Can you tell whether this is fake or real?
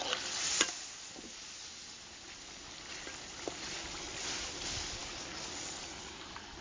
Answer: real